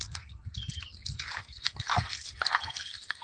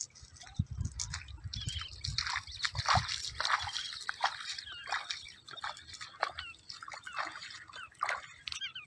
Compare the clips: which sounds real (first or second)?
second